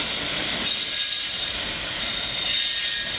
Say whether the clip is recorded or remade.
recorded